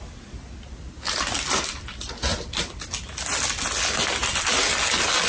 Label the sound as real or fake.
real